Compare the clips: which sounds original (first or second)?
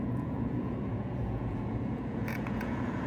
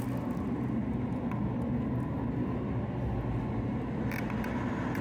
second